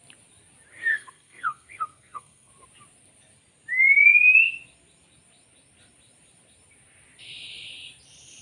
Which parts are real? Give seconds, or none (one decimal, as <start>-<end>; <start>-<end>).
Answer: 0.0-0.9; 2.5-8.4